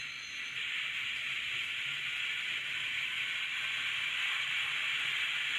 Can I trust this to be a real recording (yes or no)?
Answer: yes